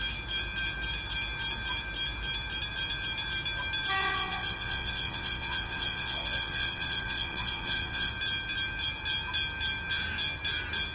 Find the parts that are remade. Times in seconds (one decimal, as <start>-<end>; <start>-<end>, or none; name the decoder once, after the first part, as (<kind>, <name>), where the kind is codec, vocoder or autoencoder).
4.0-8.1 (vocoder, Vocos)